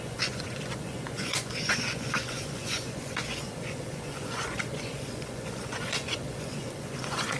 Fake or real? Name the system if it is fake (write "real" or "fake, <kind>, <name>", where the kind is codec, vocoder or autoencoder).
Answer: fake, vocoder, Vocos